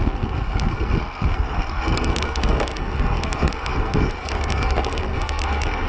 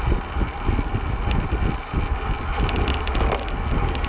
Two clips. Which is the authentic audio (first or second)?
second